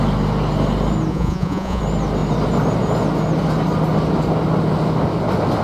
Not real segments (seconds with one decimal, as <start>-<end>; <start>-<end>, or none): 1.1-1.8

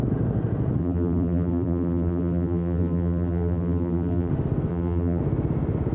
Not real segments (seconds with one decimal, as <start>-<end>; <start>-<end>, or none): 0.8-4.3; 4.7-5.2